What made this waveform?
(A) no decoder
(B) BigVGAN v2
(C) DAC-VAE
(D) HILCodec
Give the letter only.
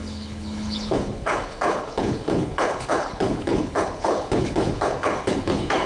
D